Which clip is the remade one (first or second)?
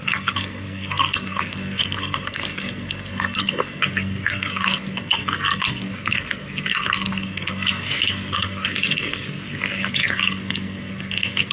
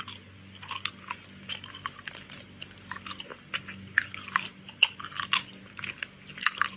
first